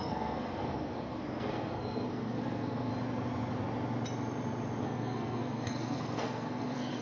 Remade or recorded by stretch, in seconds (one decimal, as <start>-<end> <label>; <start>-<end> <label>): 0.0-2.9 remade; 2.9-4.8 recorded; 4.8-7.0 remade